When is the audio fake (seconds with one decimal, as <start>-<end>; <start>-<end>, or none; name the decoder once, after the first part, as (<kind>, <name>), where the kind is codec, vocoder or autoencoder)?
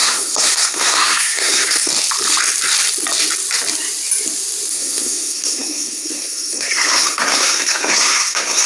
0.0-1.9 (codec, SNAC); 4.7-8.7